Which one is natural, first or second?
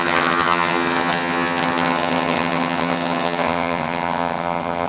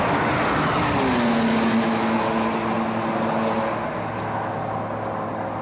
second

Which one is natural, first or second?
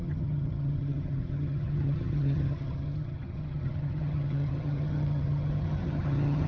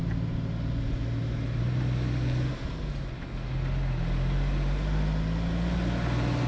second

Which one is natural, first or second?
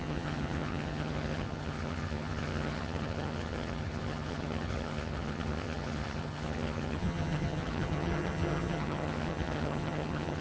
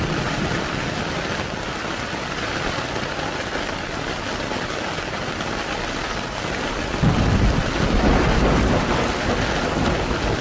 second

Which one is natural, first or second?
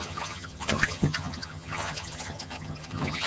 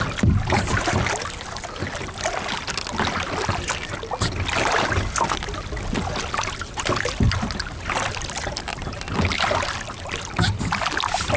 second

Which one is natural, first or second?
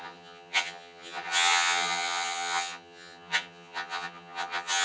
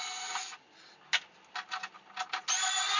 second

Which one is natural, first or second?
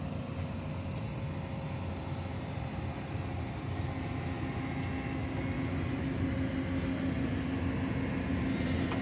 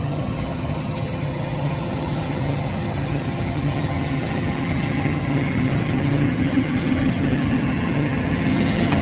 first